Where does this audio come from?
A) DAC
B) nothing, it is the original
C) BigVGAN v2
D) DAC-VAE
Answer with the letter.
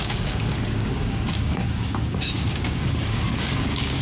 A